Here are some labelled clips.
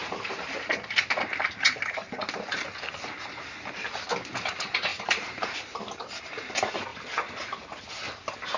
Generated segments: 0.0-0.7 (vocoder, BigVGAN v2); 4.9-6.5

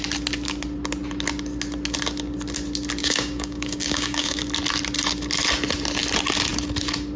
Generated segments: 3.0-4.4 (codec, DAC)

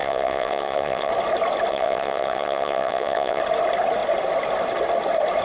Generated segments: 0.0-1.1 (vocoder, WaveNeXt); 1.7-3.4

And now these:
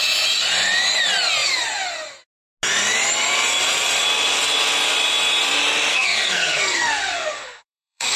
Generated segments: 5.9-8.2 (codec, SNAC)

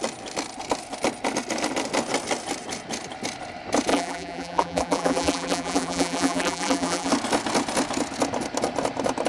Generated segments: 3.9-7.1 (vocoder, BigVGAN v2)

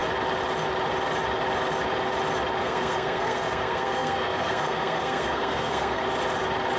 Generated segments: 2.6-6.0 (codec, SNAC)